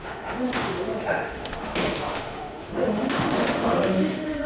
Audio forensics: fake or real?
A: fake